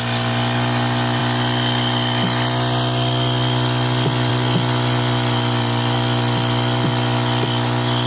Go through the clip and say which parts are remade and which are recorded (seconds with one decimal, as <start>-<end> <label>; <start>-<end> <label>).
0.0-8.1 recorded